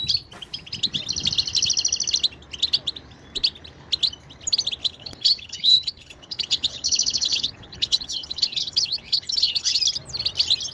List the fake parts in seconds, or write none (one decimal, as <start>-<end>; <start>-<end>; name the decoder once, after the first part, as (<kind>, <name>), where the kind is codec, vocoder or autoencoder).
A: 4.8-9.8 (codec, HILCodec)